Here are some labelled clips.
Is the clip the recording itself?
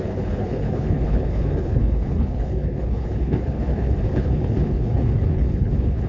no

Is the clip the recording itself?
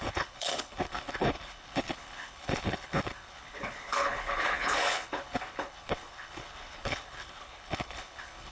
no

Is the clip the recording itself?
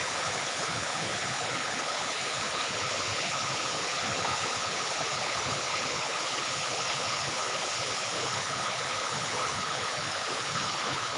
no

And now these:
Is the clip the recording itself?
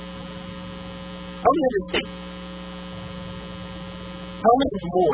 yes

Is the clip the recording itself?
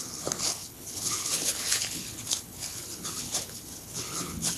no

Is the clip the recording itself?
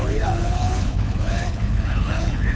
no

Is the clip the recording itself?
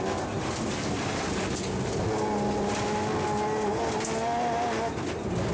yes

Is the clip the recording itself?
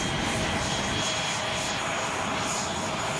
yes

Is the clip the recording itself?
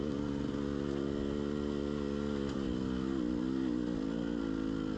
yes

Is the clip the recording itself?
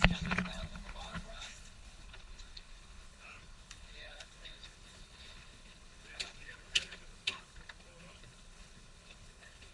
no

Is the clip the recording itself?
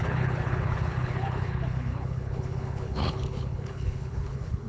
no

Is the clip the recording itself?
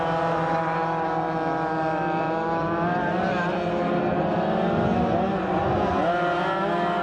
yes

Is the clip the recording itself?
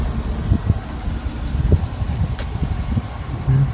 yes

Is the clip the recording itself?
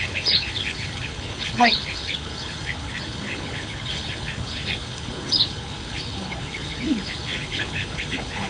no